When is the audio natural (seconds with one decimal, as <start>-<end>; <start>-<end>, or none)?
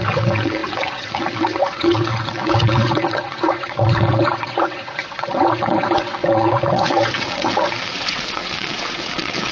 none